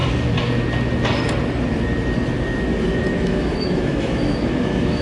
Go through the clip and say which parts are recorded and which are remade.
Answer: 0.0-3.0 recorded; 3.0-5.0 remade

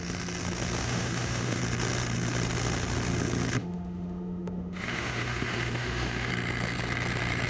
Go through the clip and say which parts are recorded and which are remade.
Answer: 0.0-0.8 recorded; 0.8-1.6 remade; 1.6-3.6 recorded; 3.6-6.3 remade; 6.3-7.5 recorded

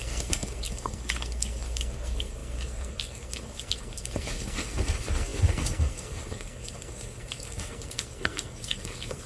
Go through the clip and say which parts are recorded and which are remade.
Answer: 0.0-9.3 remade

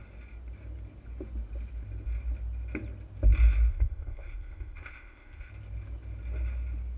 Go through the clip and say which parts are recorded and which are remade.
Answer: 0.0-3.7 recorded; 3.7-5.5 remade; 5.5-7.0 recorded

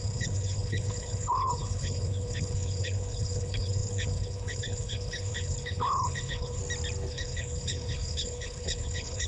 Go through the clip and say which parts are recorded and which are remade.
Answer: 0.0-6.6 remade; 6.6-7.1 recorded; 7.1-9.3 remade